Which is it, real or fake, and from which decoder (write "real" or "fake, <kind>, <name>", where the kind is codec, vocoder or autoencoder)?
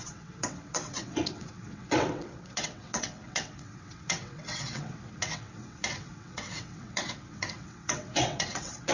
fake, vocoder, WaveNeXt